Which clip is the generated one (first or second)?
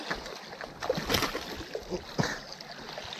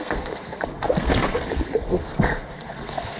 second